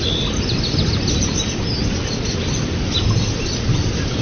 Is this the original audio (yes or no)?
yes